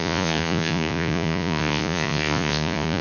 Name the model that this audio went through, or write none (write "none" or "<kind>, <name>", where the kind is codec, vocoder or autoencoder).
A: vocoder, Vocos